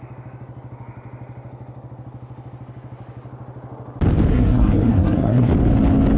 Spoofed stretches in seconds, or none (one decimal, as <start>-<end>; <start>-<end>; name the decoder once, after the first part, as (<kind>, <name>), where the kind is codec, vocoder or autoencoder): 4.3-5.5 (codec, SNAC)

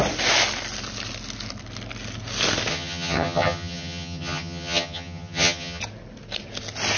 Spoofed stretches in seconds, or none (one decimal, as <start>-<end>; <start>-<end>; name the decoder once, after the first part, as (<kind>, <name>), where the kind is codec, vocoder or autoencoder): 2.7-5.8 (vocoder, HiFi-GAN)

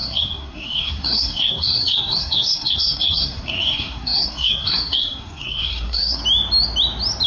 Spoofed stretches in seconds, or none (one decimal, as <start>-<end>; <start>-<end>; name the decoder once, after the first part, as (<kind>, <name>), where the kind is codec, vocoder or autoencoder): 0.0-6.2 (codec, SNAC)

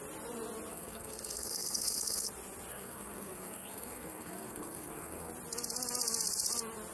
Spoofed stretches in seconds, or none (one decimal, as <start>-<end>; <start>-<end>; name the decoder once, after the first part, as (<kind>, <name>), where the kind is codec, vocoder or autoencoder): 0.7-2.3 (codec, SNAC); 2.7-5.3

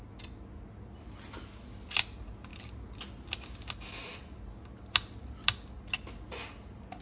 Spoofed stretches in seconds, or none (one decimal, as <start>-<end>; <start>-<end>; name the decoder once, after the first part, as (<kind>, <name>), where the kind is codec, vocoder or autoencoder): none

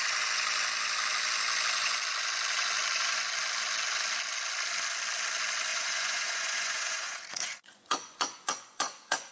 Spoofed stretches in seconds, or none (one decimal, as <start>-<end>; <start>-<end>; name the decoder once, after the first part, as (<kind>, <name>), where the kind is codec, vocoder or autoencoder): 5.7-9.3 (vocoder, Vocos)

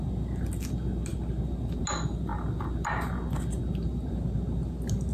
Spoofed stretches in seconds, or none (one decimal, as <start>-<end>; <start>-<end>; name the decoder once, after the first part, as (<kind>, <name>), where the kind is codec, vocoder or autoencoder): none